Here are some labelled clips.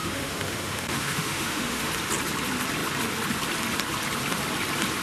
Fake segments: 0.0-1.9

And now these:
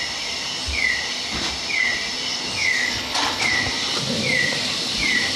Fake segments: 2.8-3.4